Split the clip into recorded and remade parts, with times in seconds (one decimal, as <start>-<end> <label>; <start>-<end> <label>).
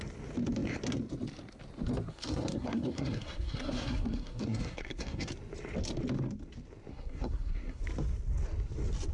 0.0-2.1 recorded; 2.1-5.3 remade; 5.3-6.9 recorded; 6.9-7.8 remade; 7.8-9.1 recorded